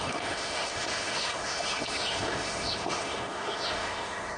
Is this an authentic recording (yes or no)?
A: no